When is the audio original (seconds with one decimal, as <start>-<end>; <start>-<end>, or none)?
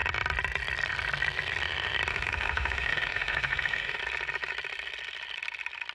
0.0-2.1; 4.0-5.9